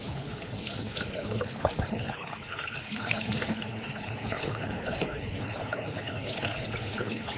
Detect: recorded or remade remade